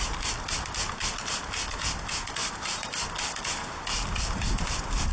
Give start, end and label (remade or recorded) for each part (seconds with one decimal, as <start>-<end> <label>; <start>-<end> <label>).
0.0-2.4 recorded; 2.4-3.1 remade; 3.1-3.6 recorded; 3.6-5.1 remade

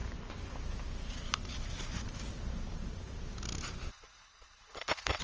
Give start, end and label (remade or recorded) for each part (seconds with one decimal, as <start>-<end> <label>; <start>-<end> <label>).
0.0-3.9 recorded; 3.9-5.2 remade

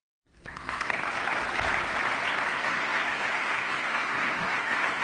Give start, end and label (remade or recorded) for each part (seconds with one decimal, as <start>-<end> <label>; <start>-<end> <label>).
0.0-1.0 remade; 1.0-2.5 recorded; 2.5-5.0 remade